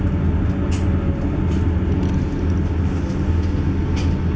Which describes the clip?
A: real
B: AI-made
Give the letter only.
A